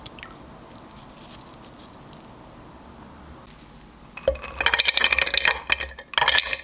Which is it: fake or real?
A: real